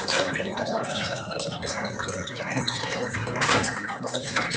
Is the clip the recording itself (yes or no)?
no